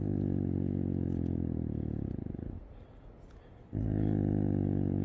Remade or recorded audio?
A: recorded